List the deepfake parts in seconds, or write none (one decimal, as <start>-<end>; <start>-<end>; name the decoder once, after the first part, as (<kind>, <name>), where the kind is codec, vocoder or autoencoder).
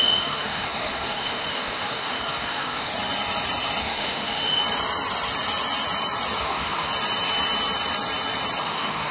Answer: 0.0-2.9 (autoencoder, DAC-VAE); 3.8-4.6; 6.4-6.9; 8.6-9.1